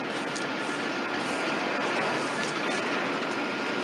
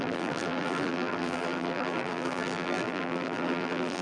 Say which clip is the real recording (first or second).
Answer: first